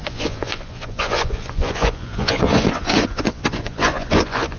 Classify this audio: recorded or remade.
remade